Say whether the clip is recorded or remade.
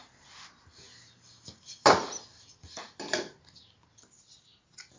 recorded